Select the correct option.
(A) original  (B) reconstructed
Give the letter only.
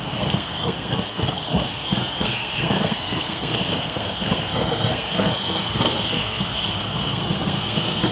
B